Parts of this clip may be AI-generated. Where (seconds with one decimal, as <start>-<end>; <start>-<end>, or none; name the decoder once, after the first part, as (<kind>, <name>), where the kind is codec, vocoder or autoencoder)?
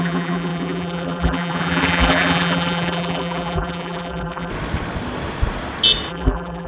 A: 0.0-4.5 (vocoder, BigVGAN v2); 6.1-6.7